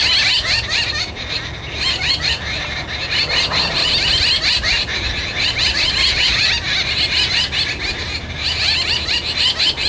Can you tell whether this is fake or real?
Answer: real